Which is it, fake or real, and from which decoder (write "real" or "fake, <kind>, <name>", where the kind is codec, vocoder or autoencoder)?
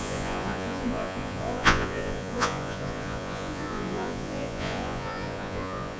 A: fake, vocoder, Vocos